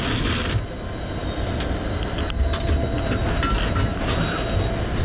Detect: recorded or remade recorded